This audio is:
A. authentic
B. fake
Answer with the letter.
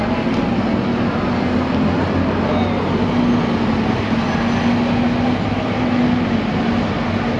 A